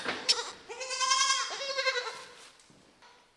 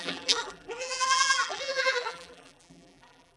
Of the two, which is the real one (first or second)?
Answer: first